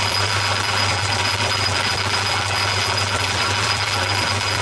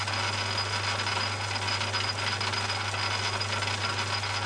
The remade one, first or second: first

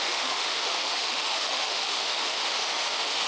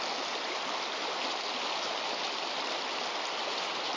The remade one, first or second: first